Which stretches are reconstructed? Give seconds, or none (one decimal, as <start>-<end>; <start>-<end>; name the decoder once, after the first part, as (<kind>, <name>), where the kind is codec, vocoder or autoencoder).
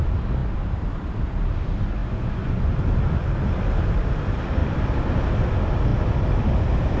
2.0-2.7 (vocoder, Vocos)